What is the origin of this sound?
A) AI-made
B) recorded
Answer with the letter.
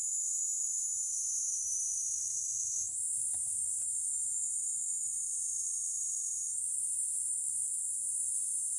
A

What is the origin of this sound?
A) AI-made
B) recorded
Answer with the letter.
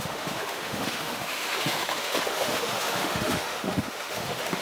A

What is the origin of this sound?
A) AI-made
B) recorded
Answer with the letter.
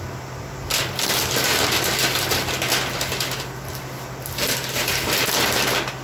B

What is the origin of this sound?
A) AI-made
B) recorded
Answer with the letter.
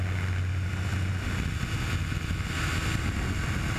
B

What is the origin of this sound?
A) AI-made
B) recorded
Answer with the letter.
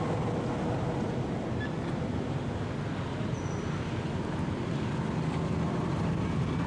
B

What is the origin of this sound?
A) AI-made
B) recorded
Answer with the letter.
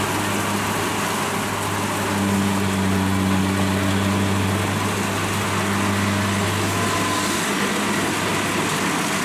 B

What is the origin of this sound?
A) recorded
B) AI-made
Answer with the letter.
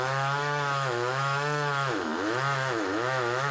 B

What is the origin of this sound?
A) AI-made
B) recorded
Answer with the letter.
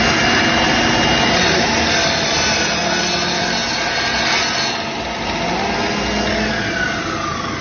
B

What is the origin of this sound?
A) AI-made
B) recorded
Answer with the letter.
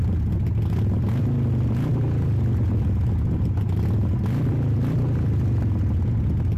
B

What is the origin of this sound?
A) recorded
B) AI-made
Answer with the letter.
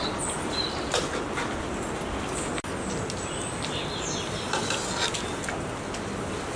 A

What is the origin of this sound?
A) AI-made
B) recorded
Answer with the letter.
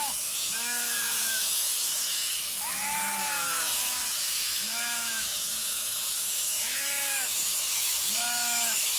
A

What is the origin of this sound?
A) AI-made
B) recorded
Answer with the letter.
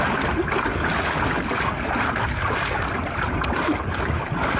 B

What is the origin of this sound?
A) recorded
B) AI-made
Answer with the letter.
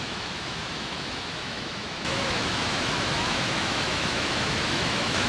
B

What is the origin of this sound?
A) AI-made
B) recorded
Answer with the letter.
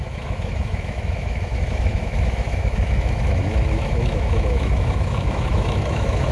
A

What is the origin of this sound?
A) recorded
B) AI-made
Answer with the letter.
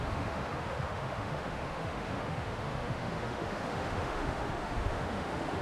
B